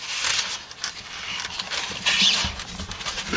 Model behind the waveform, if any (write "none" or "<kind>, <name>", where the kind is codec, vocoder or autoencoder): none